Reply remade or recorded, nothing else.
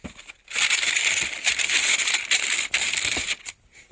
recorded